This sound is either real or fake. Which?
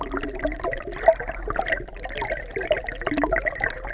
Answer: real